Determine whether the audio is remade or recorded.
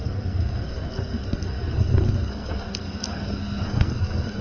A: remade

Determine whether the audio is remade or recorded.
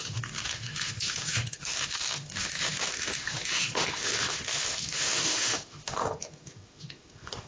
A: remade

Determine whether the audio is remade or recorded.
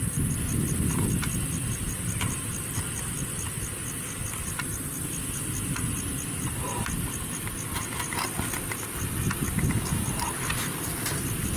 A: recorded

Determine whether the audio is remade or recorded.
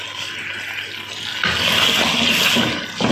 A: recorded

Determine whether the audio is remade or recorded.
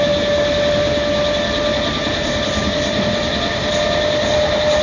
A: recorded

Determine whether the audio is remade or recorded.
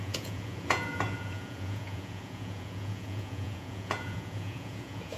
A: remade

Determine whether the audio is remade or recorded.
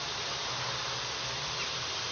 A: recorded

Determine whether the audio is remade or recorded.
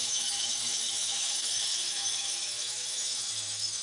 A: remade